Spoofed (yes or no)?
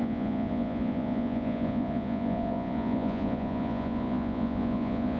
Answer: yes